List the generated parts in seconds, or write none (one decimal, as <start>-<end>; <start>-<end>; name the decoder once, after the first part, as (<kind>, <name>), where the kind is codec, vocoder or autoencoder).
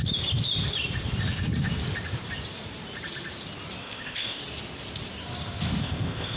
3.8-4.4 (codec, ZipCodec); 5.8-6.4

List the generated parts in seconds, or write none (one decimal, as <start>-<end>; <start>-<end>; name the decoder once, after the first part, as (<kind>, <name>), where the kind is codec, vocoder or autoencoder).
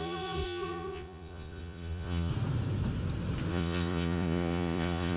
0.0-2.3 (vocoder, Vocos); 3.5-5.2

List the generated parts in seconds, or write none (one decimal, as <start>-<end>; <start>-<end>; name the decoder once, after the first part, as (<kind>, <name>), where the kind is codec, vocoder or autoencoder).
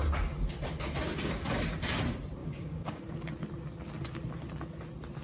2.4-3.0 (codec, DAC)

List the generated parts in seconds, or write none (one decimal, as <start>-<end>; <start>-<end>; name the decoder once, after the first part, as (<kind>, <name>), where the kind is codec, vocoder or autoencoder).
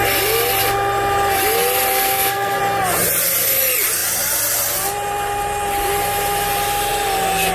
1.9-2.6 (codec, SNAC)